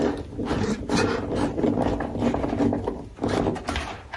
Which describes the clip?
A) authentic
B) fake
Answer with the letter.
A